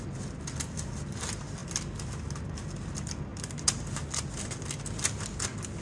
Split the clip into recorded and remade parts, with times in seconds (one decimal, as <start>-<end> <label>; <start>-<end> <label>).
0.0-5.8 recorded